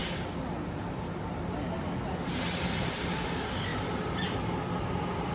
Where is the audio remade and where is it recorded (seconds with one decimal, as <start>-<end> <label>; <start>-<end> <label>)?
0.0-5.3 recorded